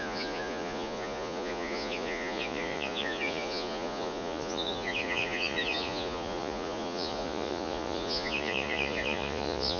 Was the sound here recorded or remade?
remade